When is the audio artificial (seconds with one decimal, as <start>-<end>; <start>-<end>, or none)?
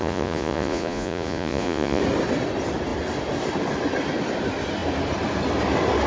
0.0-2.0